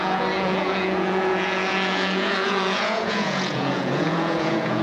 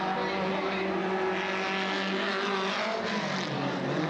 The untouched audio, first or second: second